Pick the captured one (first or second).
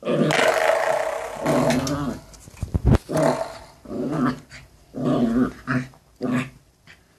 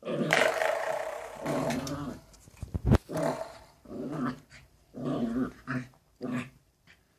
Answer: first